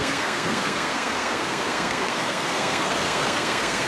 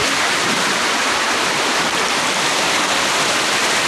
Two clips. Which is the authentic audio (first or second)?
second